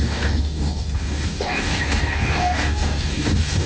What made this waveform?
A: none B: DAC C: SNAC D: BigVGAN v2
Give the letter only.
B